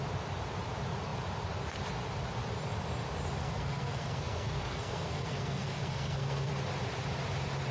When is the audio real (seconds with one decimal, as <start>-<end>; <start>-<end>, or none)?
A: 0.0-3.4; 6.5-7.7